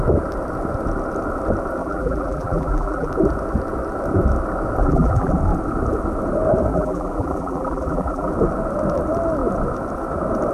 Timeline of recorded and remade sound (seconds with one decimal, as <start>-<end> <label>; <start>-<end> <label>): 0.0-1.8 recorded; 1.8-3.1 remade; 3.1-4.8 recorded; 4.8-5.3 remade; 5.3-6.7 recorded; 6.7-8.3 remade; 8.3-10.5 recorded